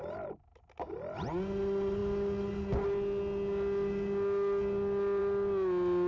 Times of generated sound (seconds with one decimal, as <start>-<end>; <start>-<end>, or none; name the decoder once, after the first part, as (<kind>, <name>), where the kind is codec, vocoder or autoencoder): none